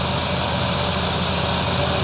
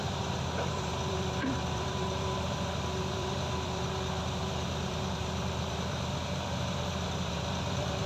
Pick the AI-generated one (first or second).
second